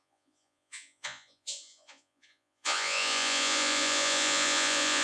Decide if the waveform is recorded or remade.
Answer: remade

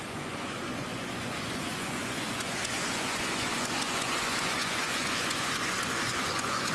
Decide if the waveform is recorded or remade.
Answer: remade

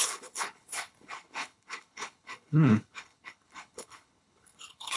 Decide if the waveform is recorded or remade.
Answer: remade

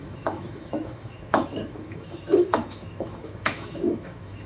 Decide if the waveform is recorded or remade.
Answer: remade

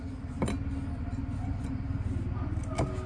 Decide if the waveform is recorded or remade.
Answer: recorded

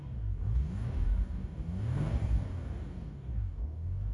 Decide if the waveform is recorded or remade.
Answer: remade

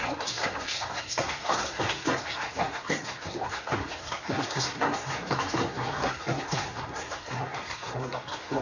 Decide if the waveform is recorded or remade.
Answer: remade